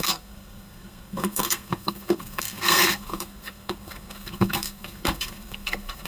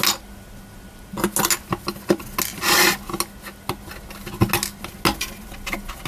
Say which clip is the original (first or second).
second